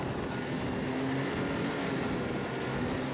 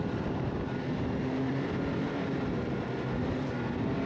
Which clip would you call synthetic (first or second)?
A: second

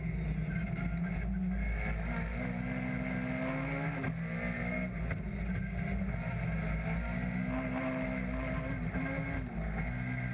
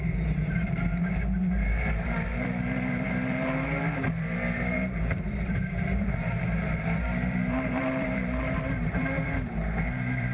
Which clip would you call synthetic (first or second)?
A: second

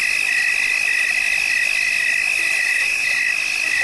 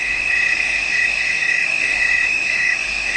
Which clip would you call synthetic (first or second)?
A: second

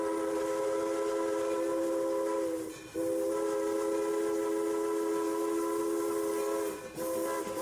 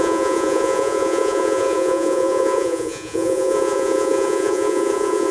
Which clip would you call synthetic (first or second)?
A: second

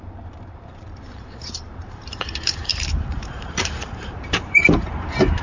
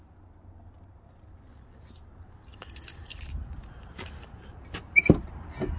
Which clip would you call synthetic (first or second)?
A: first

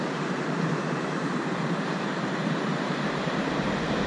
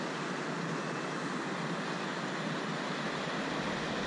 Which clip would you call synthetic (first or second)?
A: first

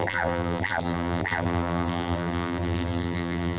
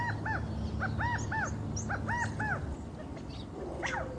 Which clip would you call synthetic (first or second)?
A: first